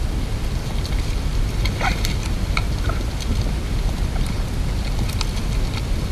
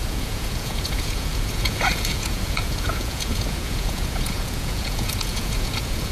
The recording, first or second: first